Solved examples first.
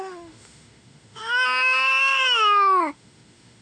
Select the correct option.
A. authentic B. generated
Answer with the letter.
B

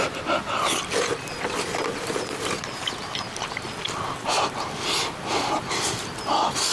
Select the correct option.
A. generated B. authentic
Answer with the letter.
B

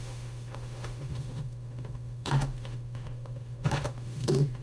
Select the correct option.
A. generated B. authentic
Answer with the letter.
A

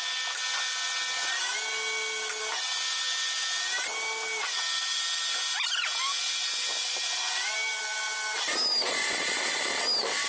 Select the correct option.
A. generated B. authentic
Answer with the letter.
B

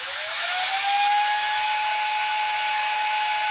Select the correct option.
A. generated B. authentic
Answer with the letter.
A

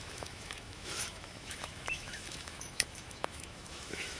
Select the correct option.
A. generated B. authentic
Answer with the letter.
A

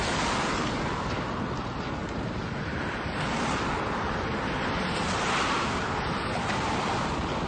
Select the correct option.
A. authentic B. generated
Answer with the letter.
A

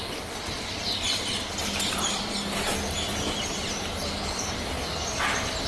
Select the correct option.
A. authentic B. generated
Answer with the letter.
A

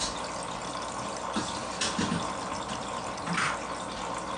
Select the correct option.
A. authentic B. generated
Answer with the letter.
A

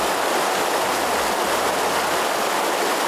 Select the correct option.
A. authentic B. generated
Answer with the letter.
A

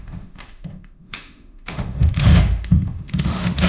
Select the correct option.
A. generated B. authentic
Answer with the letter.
A